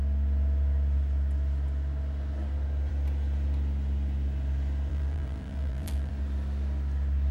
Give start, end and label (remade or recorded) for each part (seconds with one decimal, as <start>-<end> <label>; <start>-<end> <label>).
0.0-4.9 recorded; 4.9-6.1 remade; 6.1-7.3 recorded